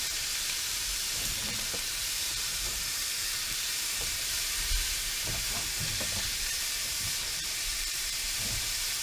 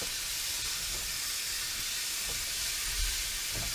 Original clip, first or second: second